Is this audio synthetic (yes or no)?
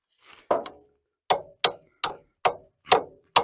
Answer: no